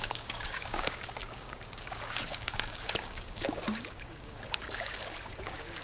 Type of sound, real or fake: fake